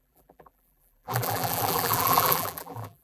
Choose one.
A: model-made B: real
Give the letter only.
A